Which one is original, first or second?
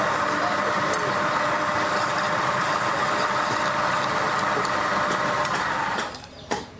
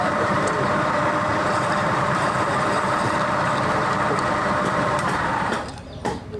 first